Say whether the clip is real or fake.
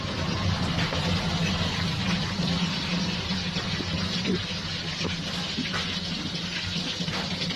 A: real